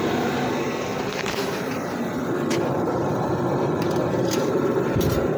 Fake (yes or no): yes